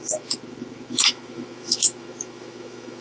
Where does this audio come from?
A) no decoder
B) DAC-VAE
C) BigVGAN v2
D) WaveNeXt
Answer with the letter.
B